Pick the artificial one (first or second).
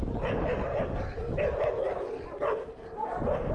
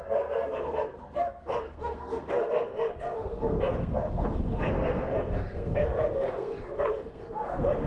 second